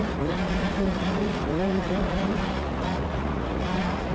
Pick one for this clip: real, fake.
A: fake